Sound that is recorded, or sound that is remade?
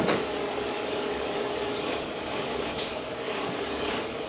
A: remade